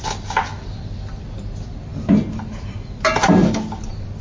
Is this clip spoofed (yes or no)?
no